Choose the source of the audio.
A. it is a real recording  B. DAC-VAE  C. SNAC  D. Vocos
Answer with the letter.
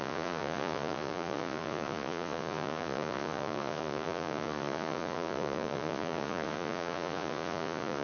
D